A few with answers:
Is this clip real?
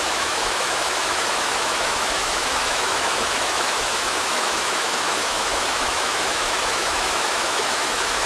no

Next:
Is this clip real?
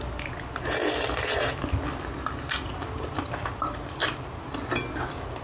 yes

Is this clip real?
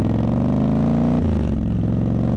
yes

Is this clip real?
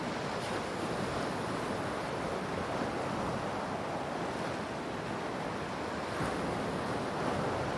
yes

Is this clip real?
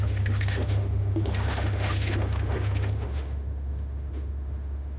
no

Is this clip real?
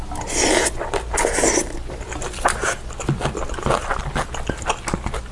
yes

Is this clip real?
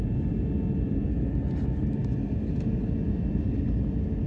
yes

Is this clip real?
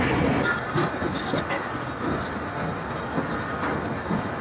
yes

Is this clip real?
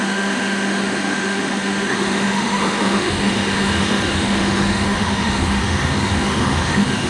no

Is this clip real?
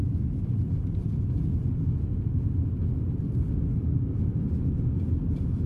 yes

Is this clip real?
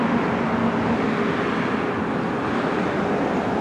yes